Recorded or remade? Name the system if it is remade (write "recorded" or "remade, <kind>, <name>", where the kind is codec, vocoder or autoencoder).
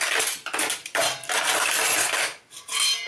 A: remade, vocoder, BigVGAN v2